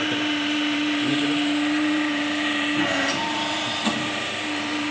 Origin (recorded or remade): remade